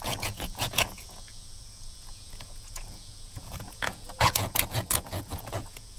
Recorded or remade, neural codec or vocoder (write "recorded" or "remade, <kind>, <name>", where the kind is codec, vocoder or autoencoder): remade, vocoder, Vocos